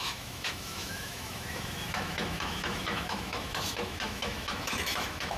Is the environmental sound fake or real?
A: fake